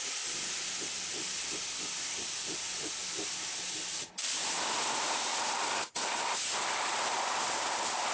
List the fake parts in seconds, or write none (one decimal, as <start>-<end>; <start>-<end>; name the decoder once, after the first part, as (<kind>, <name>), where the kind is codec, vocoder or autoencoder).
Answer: none